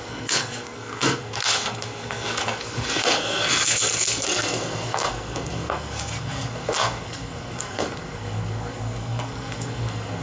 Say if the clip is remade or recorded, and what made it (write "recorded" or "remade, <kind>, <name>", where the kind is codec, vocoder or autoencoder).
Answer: remade, codec, SNAC